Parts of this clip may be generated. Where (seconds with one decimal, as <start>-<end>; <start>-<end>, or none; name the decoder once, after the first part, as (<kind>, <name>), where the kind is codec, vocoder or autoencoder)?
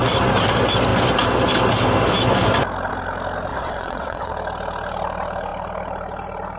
3.5-4.3 (vocoder, WaveNeXt)